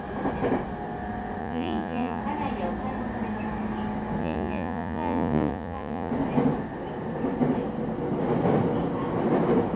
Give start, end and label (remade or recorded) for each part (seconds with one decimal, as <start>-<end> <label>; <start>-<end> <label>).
0.0-1.4 recorded; 1.4-2.2 remade; 2.2-4.2 recorded; 4.2-6.1 remade; 6.1-9.8 recorded